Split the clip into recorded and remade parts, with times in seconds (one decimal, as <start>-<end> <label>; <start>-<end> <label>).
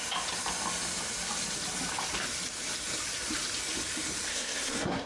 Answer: 0.0-4.3 recorded; 4.3-5.1 remade